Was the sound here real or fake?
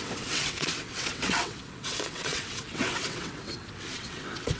fake